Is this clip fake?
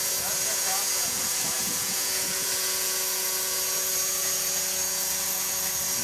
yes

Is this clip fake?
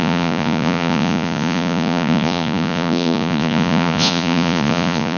yes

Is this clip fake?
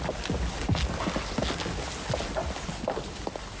no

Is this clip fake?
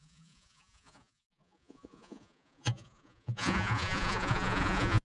yes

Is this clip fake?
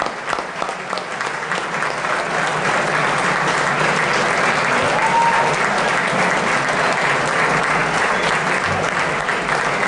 no